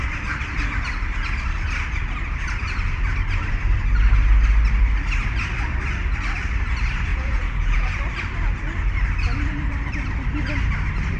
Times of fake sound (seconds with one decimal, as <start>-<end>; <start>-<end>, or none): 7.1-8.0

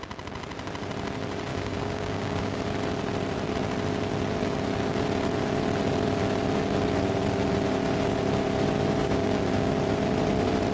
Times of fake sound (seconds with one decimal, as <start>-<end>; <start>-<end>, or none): 1.5-2.6; 9.0-9.7

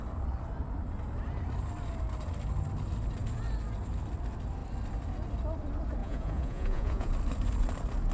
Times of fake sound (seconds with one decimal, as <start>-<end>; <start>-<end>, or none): 6.0-7.1

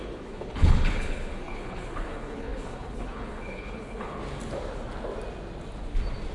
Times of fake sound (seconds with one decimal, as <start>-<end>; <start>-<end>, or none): 0.0-4.2

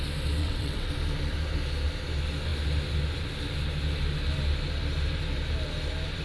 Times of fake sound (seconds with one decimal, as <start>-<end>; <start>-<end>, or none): 0.4-0.9

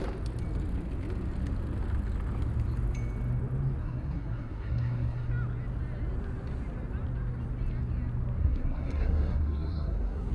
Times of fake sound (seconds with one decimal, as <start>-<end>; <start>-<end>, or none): 3.8-5.3; 8.4-10.3

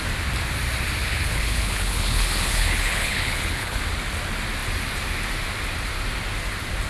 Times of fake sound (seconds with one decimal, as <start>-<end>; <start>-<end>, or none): 1.0-3.8